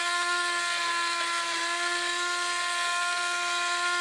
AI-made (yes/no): no